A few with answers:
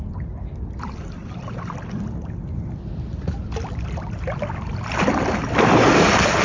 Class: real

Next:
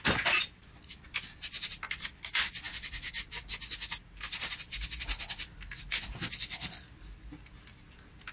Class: real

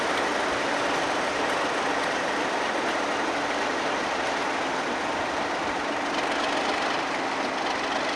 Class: real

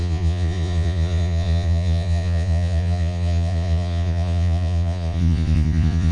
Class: fake